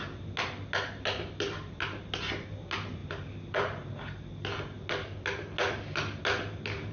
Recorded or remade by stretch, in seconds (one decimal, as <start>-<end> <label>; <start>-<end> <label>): 0.0-3.0 recorded; 3.0-3.9 remade; 3.9-6.9 recorded